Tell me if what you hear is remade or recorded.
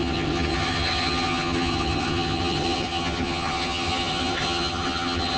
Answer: remade